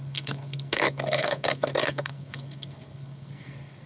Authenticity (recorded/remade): remade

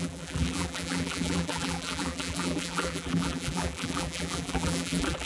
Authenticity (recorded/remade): remade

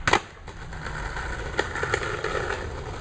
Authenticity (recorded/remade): recorded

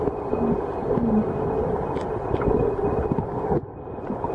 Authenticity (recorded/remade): recorded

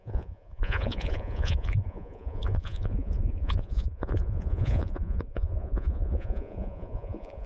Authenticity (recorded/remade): remade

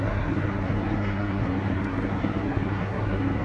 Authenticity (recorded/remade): remade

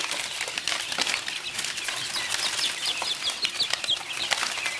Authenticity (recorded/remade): recorded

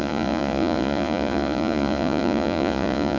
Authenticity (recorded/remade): remade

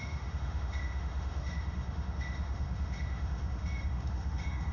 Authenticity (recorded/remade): remade